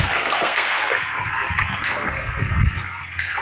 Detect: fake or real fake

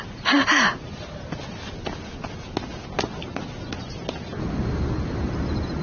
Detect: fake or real real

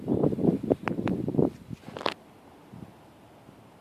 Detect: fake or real fake